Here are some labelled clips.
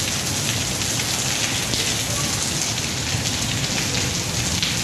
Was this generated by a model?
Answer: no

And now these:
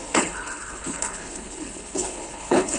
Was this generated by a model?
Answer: yes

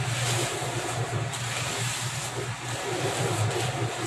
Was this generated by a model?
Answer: no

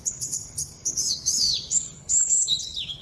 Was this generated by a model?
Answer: yes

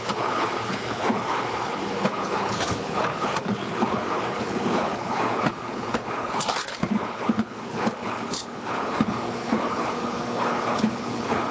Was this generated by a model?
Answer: yes